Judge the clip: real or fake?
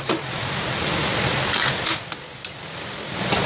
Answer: real